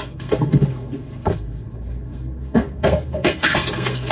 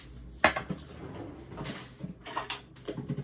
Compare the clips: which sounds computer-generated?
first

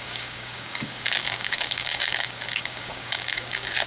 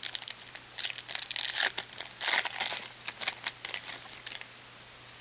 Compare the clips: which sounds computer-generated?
first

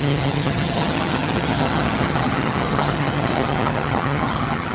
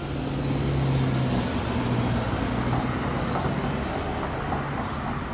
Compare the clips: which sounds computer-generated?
first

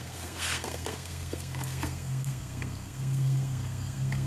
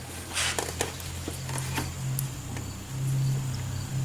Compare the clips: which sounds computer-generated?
first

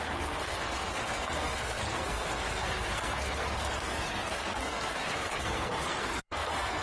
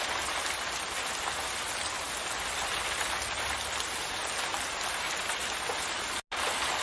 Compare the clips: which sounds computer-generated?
first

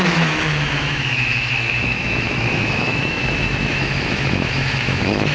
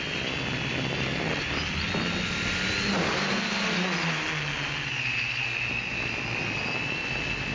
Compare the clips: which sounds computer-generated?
first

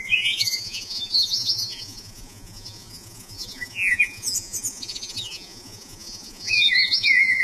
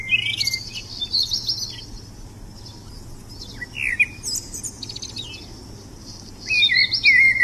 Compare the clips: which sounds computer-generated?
first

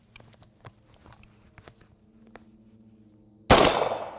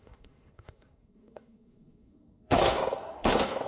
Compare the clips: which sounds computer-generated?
second